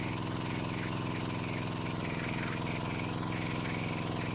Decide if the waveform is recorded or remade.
recorded